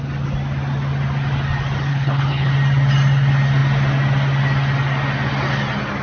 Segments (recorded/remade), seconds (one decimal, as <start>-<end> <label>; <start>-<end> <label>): 0.0-1.9 recorded; 1.9-2.5 remade; 2.5-6.0 recorded

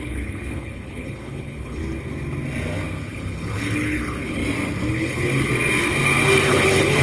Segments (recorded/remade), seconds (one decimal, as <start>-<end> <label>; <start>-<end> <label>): 0.0-1.8 remade; 1.8-3.1 recorded; 3.1-4.4 remade; 4.4-4.9 recorded; 4.9-5.5 remade; 5.5-6.5 recorded; 6.5-7.0 remade

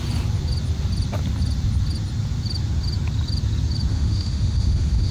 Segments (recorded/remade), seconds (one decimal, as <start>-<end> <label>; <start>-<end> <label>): 0.0-3.9 recorded; 3.9-5.1 remade